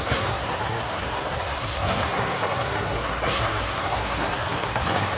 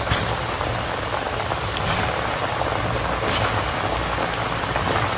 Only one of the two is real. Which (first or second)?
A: second